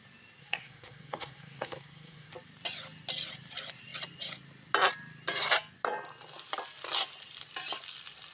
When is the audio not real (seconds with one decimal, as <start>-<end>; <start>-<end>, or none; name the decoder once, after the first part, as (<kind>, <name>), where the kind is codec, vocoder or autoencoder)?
0.4-2.3 (codec, SNAC)